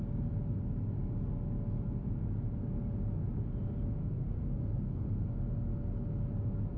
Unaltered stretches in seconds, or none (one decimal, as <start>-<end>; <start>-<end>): 0.0-4.0; 5.3-6.8